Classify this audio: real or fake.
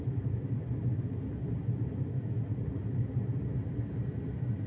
real